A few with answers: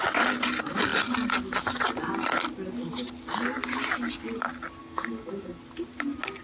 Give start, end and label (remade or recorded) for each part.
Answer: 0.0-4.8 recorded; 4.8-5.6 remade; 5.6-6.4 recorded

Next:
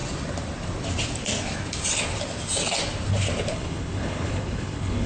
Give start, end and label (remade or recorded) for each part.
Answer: 0.0-3.5 recorded; 3.5-5.1 remade

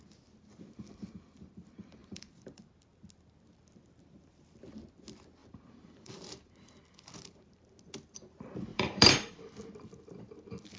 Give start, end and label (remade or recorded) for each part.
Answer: 0.0-2.0 recorded; 2.0-2.7 remade; 2.7-5.4 recorded; 5.4-6.5 remade; 6.5-8.7 recorded; 8.7-9.3 remade; 9.3-10.8 recorded

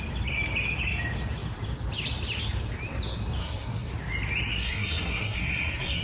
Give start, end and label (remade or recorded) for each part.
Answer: 0.0-3.4 recorded; 3.4-3.9 remade; 3.9-4.5 recorded; 4.5-6.0 remade

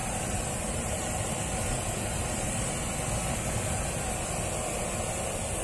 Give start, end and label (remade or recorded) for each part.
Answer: 0.0-2.7 remade; 2.7-5.6 recorded

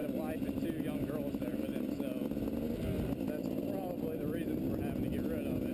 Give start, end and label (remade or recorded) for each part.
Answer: 0.0-5.7 recorded

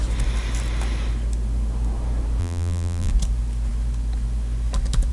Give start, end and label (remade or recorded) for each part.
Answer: 0.0-2.4 recorded; 2.4-3.1 remade; 3.1-5.1 recorded

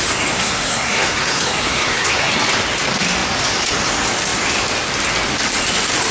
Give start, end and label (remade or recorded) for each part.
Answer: 0.0-0.4 recorded; 0.4-2.3 remade; 2.3-6.1 recorded